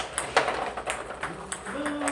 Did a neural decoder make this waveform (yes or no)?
no